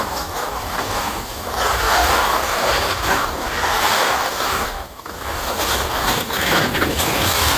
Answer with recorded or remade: remade